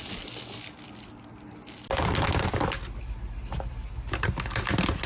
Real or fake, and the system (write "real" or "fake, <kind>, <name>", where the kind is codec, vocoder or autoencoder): real